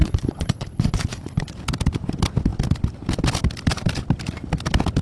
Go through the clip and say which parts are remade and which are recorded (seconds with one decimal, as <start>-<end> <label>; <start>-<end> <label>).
0.0-1.5 remade; 1.5-5.0 recorded